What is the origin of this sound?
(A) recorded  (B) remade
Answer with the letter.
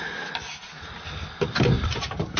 A